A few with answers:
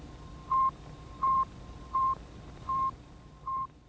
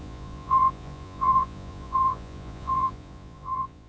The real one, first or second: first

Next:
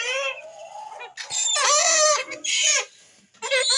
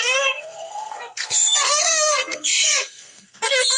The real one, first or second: first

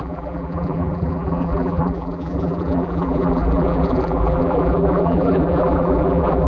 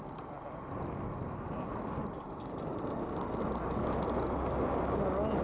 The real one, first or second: second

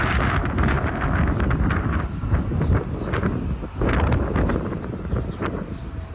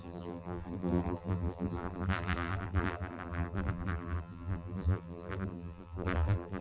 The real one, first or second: first